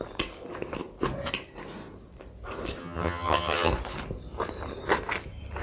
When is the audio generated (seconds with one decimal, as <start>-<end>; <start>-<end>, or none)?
2.8-3.7